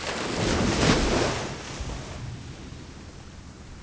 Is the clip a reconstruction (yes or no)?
no